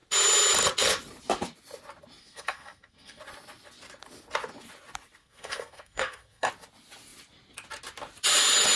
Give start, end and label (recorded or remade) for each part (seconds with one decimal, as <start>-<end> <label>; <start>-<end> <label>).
0.0-2.2 recorded; 2.2-3.2 remade; 3.2-5.2 recorded; 5.2-6.5 remade; 6.5-8.8 recorded